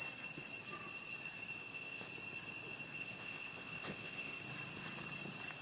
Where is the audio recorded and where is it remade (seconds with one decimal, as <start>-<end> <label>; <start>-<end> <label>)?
0.0-1.6 recorded; 1.6-2.1 remade; 2.1-3.0 recorded; 3.0-4.4 remade; 4.4-5.6 recorded